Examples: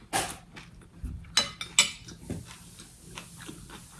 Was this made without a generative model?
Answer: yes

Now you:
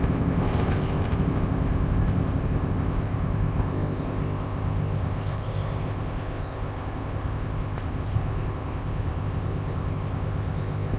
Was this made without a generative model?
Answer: no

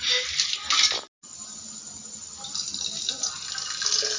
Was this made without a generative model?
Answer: yes